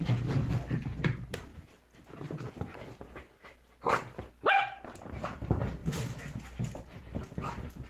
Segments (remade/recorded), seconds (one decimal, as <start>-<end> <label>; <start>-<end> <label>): 0.0-5.8 recorded; 5.8-6.4 remade; 6.4-7.9 recorded